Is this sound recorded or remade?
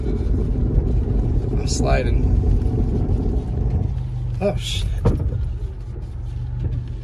recorded